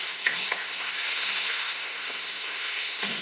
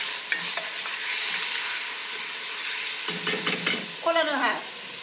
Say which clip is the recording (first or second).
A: second